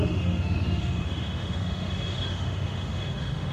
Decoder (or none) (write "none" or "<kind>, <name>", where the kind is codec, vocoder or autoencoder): autoencoder, DAC-VAE